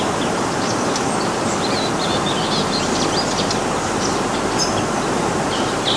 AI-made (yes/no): no